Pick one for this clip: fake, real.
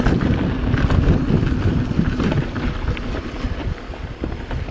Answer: real